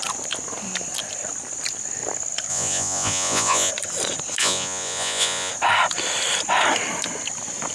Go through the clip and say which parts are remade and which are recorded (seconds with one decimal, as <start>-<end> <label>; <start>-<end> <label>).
0.0-2.5 recorded; 2.5-3.7 remade; 3.7-4.4 recorded; 4.4-5.5 remade; 5.5-7.7 recorded